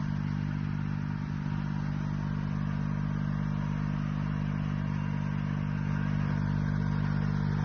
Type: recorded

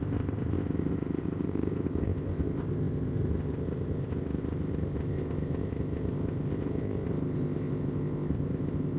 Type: remade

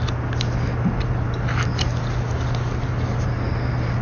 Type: recorded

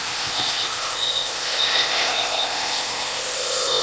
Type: remade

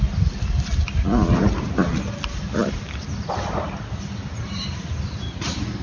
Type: recorded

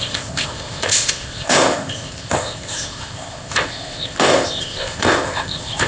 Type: remade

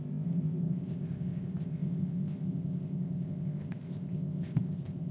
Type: remade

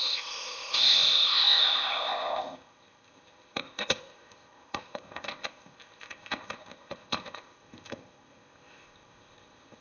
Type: remade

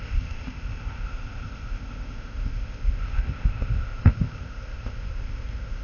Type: remade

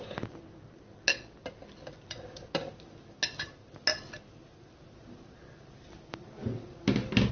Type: recorded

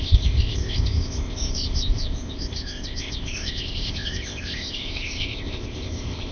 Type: remade